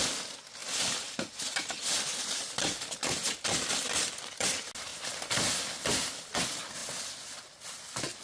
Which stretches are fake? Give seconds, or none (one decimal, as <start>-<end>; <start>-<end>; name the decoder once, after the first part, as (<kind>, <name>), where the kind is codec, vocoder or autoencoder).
none